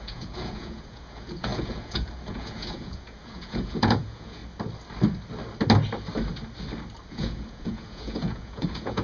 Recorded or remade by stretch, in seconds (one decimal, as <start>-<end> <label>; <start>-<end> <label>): 0.0-4.4 remade; 4.4-7.1 recorded; 7.1-9.0 remade

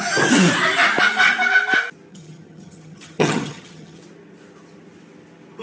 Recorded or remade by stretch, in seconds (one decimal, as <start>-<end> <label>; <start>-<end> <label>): 0.0-2.1 recorded; 2.1-4.0 remade; 4.0-5.6 recorded

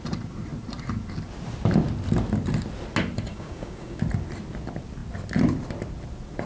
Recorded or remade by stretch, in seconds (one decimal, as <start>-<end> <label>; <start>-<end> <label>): 0.0-3.3 recorded; 3.3-4.0 remade; 4.0-6.5 recorded

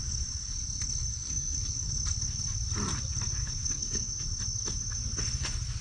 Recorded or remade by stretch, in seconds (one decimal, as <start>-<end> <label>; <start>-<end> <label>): 0.0-1.1 recorded; 1.1-1.9 remade; 1.9-3.4 recorded; 3.4-4.2 remade; 4.2-5.8 recorded